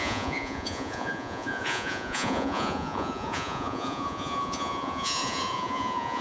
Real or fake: fake